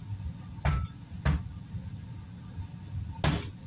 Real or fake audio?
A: real